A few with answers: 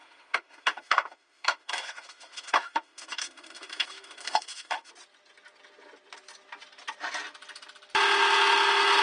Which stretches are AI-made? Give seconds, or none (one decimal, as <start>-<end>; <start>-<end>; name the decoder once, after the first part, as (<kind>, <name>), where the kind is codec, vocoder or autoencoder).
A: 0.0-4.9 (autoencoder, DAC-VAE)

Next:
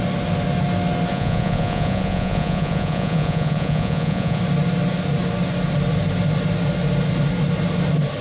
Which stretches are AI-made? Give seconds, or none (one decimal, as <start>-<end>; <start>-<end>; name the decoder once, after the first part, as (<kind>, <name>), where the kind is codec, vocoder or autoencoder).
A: 1.1-4.4 (vocoder, Vocos)

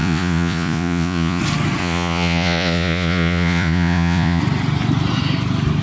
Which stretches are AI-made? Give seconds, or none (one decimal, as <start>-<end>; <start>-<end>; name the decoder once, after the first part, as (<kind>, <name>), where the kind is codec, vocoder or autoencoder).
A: 0.0-1.4 (vocoder, Vocos); 1.8-4.4